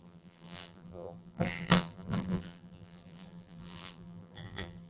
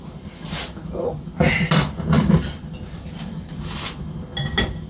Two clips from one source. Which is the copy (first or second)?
first